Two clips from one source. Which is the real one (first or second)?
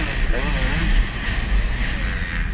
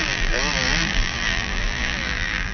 first